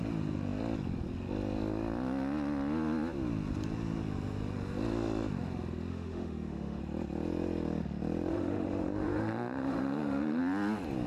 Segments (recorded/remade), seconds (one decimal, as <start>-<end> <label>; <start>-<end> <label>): 0.0-5.9 recorded; 5.9-6.8 remade; 6.8-8.3 recorded; 8.3-10.4 remade; 10.4-11.1 recorded